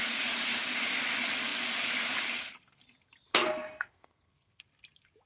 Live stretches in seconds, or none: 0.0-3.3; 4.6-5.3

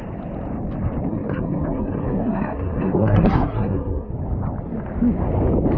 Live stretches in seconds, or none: 0.0-1.1; 4.1-5.8

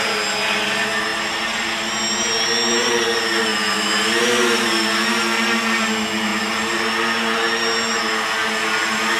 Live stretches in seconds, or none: 0.0-9.2

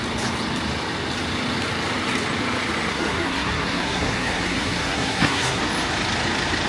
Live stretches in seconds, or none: 0.0-2.9; 5.6-6.7